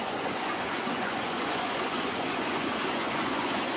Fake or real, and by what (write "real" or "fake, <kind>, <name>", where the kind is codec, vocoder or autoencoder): fake, vocoder, Vocos